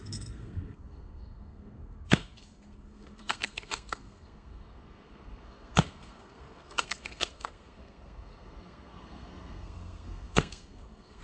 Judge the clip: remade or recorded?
remade